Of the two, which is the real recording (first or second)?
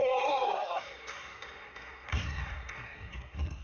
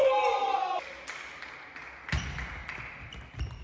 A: second